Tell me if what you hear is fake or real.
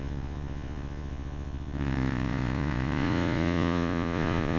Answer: fake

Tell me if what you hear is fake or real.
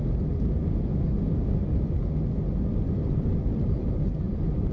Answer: real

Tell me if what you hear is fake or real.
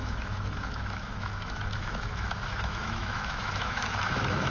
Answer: fake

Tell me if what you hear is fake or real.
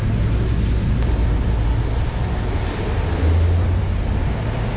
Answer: real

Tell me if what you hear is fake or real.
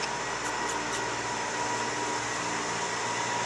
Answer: real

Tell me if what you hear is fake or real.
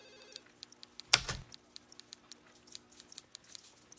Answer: real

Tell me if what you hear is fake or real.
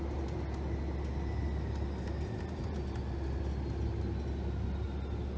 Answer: real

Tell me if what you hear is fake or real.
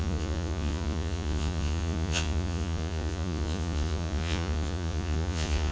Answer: fake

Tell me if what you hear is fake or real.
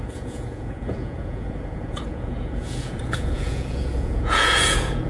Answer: fake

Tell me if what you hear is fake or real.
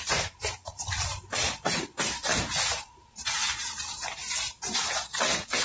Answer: fake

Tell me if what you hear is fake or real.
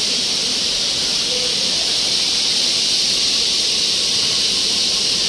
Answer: real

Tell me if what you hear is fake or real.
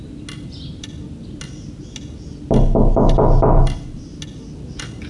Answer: real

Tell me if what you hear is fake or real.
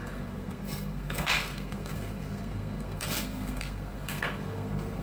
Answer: fake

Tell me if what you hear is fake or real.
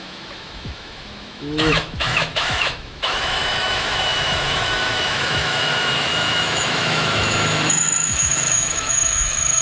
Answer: fake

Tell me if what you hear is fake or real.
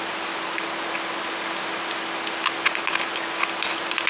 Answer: real